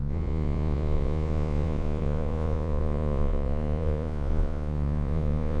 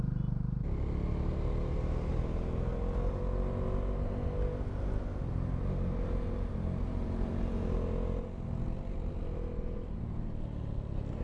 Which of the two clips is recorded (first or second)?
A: second